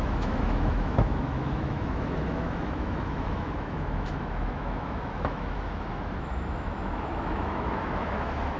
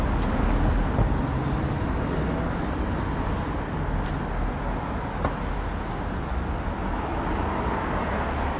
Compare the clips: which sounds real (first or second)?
second